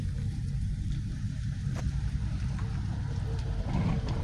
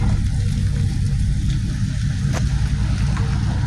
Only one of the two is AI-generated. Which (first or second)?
first